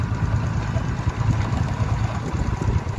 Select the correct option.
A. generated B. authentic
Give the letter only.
B